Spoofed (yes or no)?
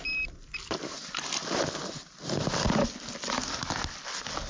no